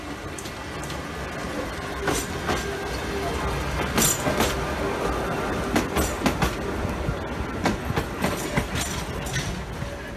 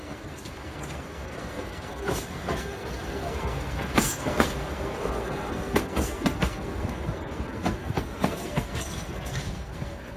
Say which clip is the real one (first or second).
first